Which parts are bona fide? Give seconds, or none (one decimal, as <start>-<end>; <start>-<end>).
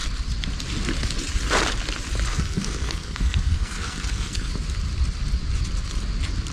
0.0-2.3; 4.5-6.5